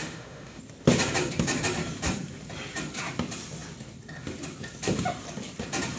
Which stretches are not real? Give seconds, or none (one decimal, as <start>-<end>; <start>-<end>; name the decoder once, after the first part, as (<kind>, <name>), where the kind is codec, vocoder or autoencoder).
0.0-0.6 (autoencoder, DAC-VAE)